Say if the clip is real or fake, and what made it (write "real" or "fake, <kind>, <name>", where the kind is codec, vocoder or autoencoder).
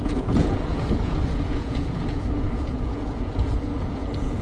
fake, vocoder, Vocos